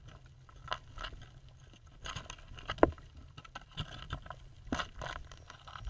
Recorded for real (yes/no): yes